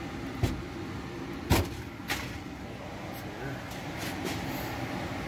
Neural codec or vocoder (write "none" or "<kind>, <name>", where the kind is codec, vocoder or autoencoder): none